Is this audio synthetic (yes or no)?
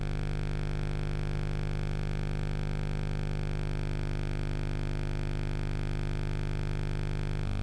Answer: no